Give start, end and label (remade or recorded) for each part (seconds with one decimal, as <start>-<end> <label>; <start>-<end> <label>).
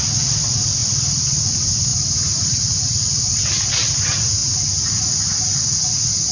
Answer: 0.0-0.8 recorded; 0.8-1.4 remade; 1.4-1.9 recorded; 1.9-3.4 remade; 3.4-6.3 recorded